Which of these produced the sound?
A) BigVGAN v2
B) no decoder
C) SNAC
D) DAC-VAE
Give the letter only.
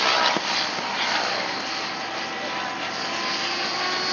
B